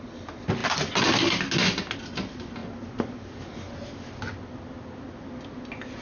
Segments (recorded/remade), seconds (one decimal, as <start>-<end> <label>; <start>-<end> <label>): 0.0-6.0 recorded